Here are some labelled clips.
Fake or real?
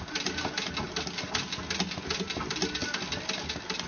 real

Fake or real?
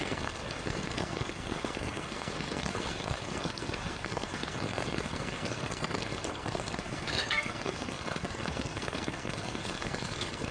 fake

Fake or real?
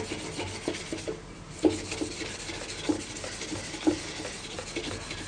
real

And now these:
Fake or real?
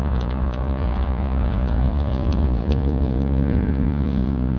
fake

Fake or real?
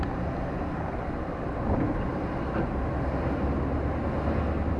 real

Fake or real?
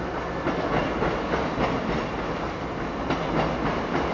real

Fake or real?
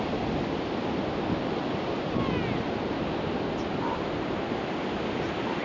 real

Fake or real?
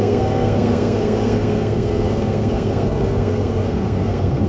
fake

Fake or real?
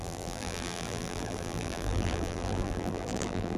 fake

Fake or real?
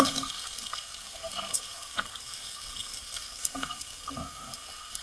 fake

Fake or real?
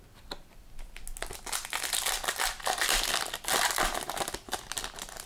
real